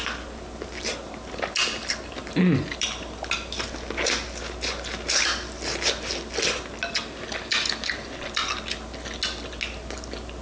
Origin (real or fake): real